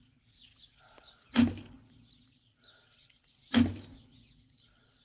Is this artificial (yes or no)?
no